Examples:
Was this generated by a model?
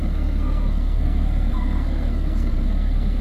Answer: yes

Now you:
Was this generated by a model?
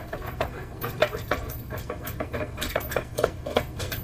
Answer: yes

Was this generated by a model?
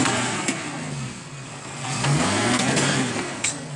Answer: yes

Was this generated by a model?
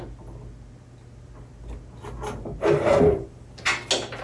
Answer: no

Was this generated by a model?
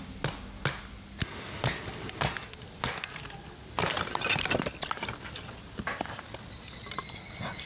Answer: no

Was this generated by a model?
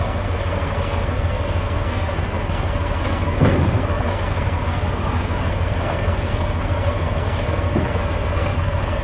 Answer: yes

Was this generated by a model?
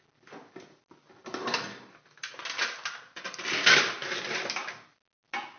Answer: no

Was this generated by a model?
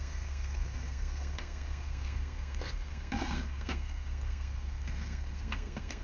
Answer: yes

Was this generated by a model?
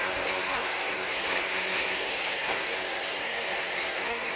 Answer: yes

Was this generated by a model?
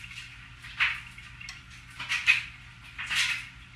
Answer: no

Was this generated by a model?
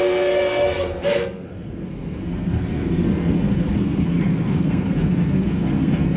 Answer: yes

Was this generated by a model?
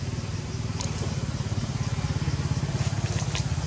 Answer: no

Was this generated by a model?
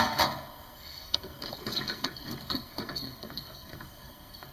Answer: yes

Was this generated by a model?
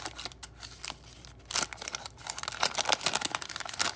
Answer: no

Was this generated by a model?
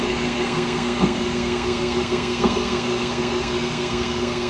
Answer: yes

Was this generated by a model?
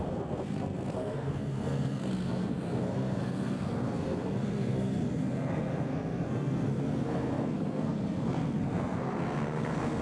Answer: yes